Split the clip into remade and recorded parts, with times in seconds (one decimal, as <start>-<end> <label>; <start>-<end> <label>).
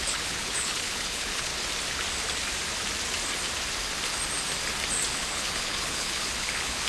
0.0-1.5 remade; 1.5-5.1 recorded; 5.1-6.9 remade